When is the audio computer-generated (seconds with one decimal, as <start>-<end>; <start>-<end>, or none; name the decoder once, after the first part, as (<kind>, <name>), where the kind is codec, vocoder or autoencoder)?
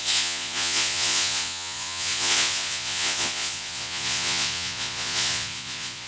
0.0-6.1 (vocoder, Vocos)